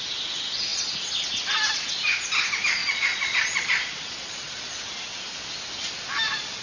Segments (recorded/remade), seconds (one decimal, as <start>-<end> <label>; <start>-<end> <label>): 0.0-2.8 recorded; 2.8-4.8 remade; 4.8-6.6 recorded